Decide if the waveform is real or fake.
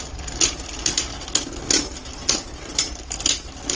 real